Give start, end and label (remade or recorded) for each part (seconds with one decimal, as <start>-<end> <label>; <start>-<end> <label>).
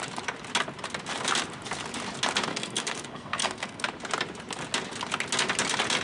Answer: 0.0-2.5 recorded; 2.5-3.8 remade; 3.8-6.0 recorded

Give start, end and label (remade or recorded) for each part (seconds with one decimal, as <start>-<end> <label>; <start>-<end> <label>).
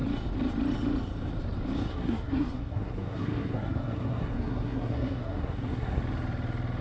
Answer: 0.0-1.9 recorded; 1.9-6.0 remade; 6.0-6.8 recorded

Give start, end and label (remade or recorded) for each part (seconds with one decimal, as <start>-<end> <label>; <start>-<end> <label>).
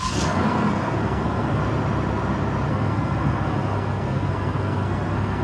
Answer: 0.0-1.6 remade; 1.6-2.7 recorded; 2.7-5.4 remade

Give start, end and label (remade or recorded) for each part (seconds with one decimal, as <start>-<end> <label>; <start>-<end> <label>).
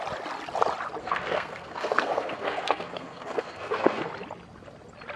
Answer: 0.0-1.0 recorded; 1.0-4.1 remade; 4.1-5.2 recorded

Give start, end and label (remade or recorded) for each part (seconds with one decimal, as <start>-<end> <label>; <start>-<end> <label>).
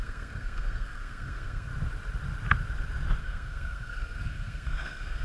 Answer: 0.0-1.7 remade; 1.7-3.2 recorded; 3.2-5.2 remade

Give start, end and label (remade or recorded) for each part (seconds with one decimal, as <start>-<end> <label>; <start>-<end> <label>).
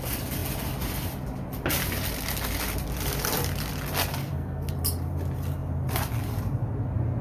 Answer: 0.0-4.2 recorded; 4.2-4.7 remade; 4.7-7.2 recorded